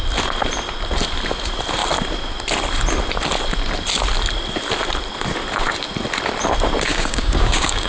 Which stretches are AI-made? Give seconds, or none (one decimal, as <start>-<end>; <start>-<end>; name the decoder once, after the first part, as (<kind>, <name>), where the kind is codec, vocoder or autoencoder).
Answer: 6.9-7.9 (codec, DAC)

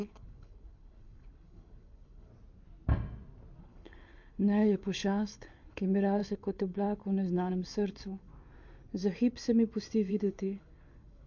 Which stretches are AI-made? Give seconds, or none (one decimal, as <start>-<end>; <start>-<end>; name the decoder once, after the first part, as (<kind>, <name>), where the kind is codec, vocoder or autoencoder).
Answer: 0.0-2.3 (codec, HILCodec); 3.6-8.3; 10.1-11.3

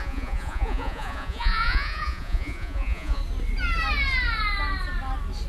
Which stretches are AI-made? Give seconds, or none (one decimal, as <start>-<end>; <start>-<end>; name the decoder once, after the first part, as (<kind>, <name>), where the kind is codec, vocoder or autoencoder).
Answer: 0.0-3.2 (vocoder, Vocos)

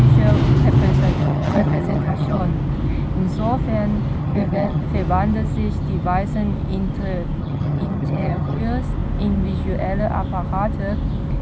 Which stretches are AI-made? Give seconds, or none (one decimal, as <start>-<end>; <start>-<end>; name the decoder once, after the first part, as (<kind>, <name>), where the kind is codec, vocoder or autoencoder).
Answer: 1.2-2.4 (vocoder, HiFi-GAN); 4.2-4.8; 7.4-8.6

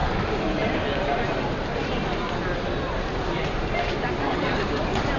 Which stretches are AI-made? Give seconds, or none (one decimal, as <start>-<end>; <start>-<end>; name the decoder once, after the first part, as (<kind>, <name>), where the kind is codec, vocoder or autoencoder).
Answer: 3.1-5.2 (vocoder, BigVGAN v2)

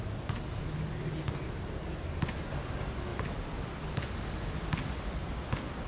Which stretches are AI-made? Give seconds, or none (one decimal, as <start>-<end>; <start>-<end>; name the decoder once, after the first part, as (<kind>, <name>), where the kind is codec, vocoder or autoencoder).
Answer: 3.1-4.2 (vocoder, BigVGAN v2)

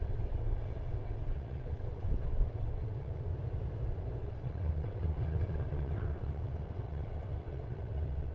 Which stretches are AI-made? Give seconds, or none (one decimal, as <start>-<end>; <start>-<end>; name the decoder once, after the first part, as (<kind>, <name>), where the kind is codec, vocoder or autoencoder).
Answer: 0.0-3.3 (vocoder, WaveNeXt); 4.2-8.3

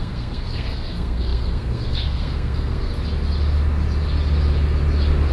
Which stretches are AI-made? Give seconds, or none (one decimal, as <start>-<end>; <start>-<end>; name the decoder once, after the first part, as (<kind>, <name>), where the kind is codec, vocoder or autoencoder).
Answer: 0.0-2.9 (codec, SNAC)